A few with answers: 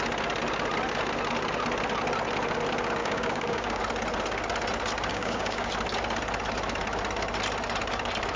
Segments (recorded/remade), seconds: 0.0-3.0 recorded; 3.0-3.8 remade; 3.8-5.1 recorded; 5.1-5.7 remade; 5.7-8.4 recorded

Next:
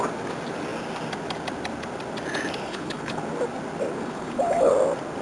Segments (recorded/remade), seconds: 0.0-2.6 recorded; 2.6-3.2 remade; 3.2-3.9 recorded; 3.9-4.7 remade; 4.7-5.2 recorded

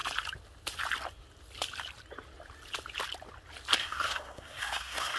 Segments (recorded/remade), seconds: 0.0-3.8 recorded; 3.8-5.2 remade